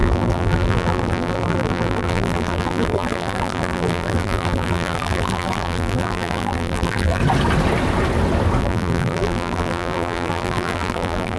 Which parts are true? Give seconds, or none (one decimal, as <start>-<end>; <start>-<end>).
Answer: 7.2-8.6